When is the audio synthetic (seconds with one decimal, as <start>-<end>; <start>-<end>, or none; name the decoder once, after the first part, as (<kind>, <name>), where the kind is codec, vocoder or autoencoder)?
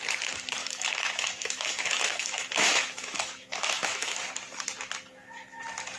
0.6-4.2 (autoencoder, DAC-VAE)